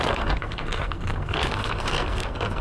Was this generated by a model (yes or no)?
yes